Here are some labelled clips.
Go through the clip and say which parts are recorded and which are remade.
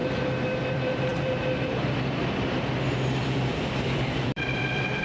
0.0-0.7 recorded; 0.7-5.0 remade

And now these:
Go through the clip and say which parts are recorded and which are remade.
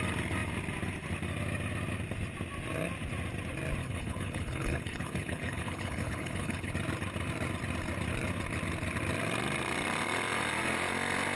0.0-3.8 recorded; 3.8-6.7 remade; 6.7-11.4 recorded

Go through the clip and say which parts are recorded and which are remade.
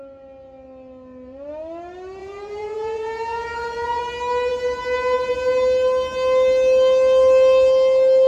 0.0-2.2 recorded; 2.2-4.0 remade; 4.0-8.3 recorded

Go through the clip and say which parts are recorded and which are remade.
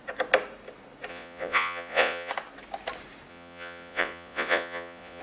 0.0-1.1 recorded; 1.1-2.3 remade; 2.3-3.3 recorded; 3.3-5.2 remade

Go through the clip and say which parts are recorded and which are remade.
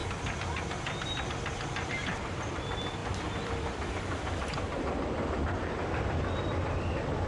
0.0-3.0 recorded; 3.0-6.3 remade; 6.3-7.3 recorded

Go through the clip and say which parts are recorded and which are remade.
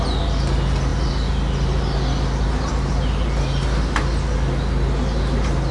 0.0-5.7 recorded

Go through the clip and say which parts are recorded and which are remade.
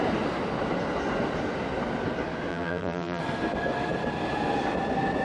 0.0-2.5 recorded; 2.5-3.2 remade; 3.2-5.2 recorded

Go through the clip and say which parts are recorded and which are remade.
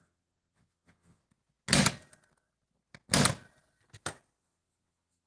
0.0-1.2 remade; 1.2-4.4 recorded; 4.4-5.3 remade